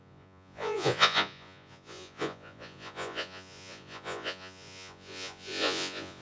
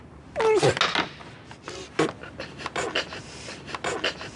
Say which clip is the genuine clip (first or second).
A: second